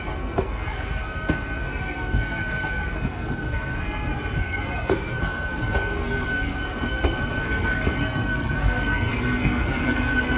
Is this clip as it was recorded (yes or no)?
no